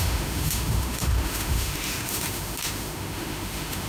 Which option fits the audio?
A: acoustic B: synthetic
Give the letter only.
B